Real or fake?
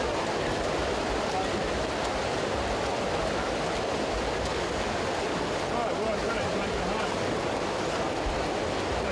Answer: real